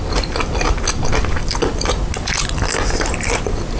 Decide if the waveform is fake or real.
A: real